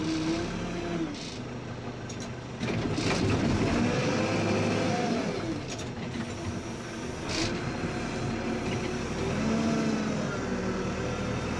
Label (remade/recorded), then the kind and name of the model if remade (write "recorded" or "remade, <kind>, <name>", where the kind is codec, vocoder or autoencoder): recorded